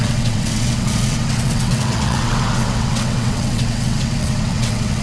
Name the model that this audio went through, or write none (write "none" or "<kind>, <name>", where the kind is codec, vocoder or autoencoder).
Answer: vocoder, WaveNeXt